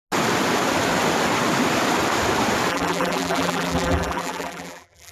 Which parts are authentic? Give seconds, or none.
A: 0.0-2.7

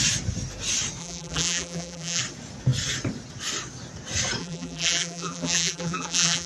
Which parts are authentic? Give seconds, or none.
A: 0.0-1.0; 2.2-4.4

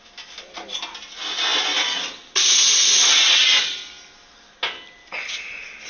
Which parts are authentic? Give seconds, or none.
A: 0.0-5.9

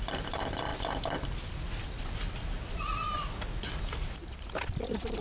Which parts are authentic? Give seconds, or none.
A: 0.0-5.2